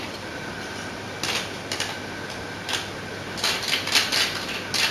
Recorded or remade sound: recorded